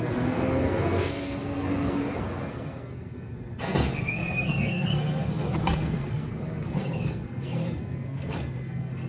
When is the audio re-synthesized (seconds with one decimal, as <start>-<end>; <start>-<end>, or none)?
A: 0.0-9.1